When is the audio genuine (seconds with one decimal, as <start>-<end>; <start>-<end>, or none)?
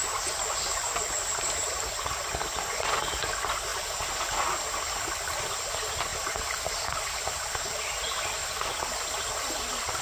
0.0-6.1; 7.6-10.0